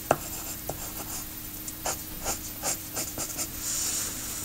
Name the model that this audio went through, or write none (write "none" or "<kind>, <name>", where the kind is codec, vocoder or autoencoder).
vocoder, BigVGAN v2